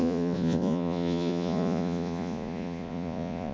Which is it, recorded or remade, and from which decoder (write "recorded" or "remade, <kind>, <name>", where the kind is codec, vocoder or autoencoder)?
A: remade, vocoder, Vocos